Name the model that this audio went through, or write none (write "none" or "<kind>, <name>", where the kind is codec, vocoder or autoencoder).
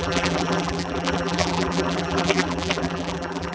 vocoder, BigVGAN v2